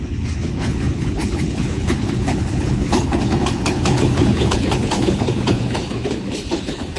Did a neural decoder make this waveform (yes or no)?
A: yes